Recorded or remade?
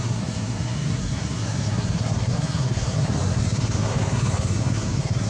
remade